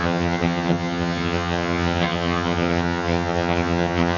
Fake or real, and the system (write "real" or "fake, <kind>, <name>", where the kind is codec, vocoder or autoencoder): fake, vocoder, HiFi-GAN